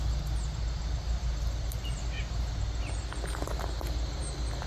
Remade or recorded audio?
recorded